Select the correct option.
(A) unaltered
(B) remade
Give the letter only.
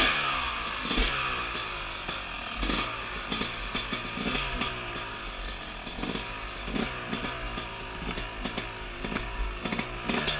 A